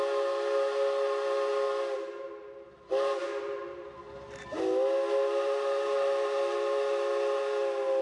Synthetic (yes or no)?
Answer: no